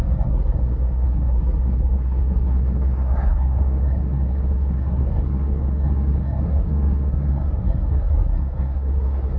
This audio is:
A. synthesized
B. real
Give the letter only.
A